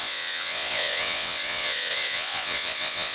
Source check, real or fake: fake